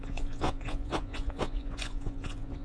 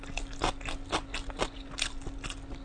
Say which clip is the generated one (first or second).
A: first